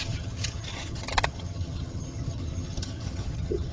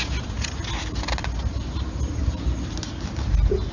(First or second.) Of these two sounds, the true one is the second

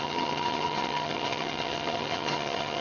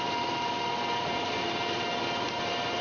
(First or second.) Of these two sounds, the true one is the second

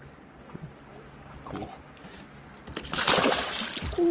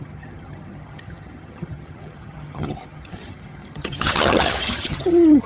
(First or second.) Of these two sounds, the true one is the first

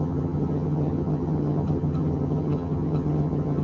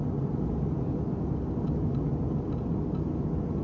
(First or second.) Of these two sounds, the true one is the second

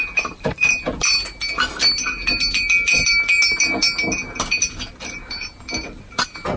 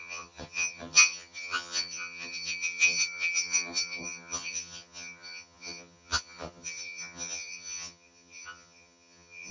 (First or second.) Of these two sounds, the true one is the first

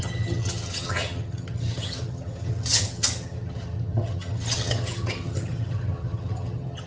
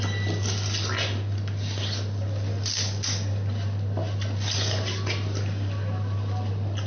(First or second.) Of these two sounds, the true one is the second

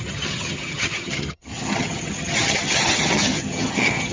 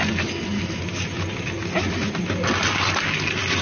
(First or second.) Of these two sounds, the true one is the second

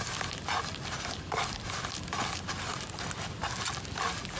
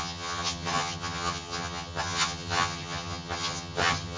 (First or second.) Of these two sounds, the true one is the first